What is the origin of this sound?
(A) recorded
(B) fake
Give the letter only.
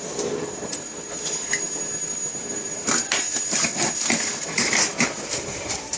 B